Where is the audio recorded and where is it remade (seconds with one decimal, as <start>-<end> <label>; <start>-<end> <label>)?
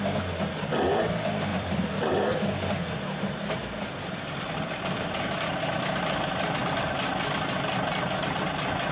0.0-1.5 recorded; 1.5-5.3 remade; 5.3-8.9 recorded